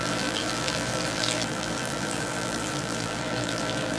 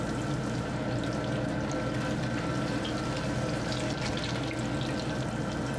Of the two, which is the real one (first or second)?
second